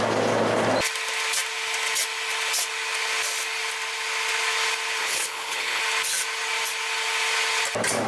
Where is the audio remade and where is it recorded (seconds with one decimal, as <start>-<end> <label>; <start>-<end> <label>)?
0.0-5.0 recorded; 5.0-5.8 remade; 5.8-8.1 recorded